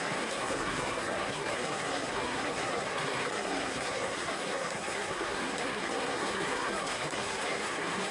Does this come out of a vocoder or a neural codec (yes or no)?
yes